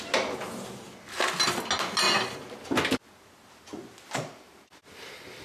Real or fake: real